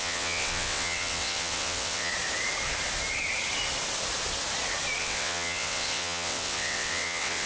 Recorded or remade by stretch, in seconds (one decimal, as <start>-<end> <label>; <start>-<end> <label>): 0.0-2.1 remade; 2.1-5.0 recorded; 5.0-7.5 remade